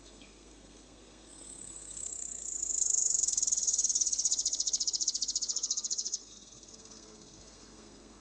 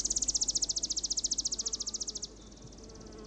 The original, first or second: second